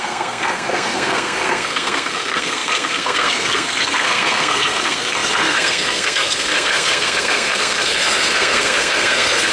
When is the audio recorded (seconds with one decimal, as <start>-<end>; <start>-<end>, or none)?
none